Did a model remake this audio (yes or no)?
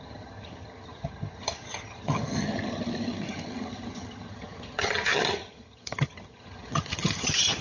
yes